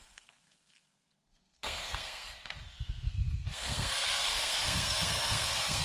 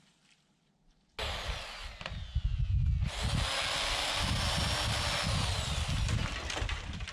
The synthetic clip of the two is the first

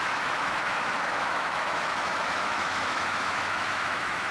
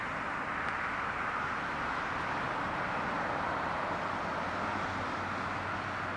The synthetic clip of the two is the first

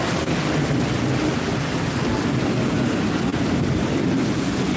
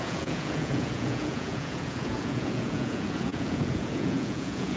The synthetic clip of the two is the second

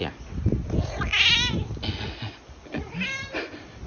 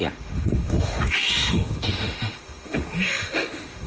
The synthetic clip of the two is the second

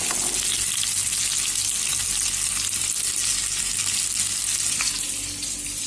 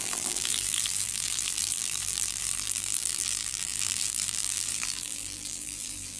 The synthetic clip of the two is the second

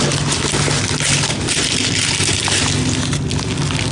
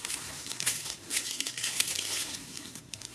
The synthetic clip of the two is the second